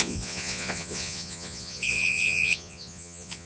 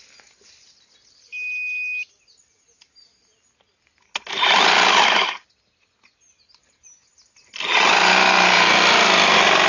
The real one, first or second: second